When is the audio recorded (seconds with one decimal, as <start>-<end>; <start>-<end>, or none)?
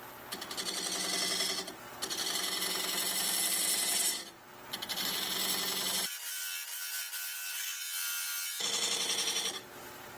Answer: 0.0-10.2